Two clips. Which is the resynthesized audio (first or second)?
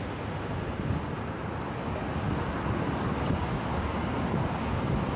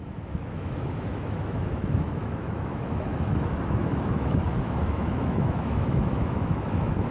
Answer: second